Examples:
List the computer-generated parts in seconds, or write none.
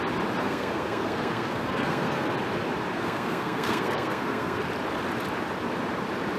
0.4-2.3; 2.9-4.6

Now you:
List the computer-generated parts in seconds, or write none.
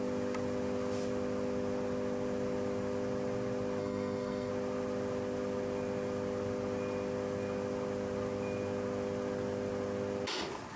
3.8-4.5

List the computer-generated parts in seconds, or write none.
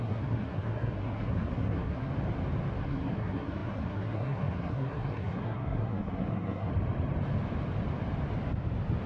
0.0-2.1; 2.8-6.7